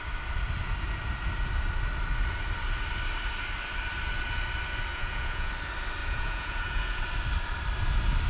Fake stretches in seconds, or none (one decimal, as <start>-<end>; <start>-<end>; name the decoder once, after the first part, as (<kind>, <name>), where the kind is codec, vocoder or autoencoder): 4.9-5.5 (vocoder, Vocos); 6.0-7.0